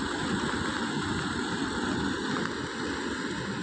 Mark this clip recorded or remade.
recorded